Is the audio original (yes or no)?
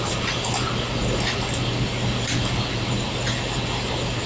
yes